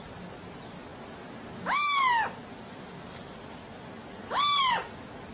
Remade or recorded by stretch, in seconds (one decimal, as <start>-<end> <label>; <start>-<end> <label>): 0.0-5.3 recorded